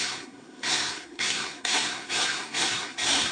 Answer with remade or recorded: remade